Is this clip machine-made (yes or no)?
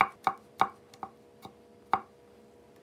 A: no